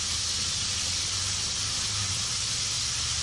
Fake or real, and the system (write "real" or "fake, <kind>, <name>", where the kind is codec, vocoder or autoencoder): real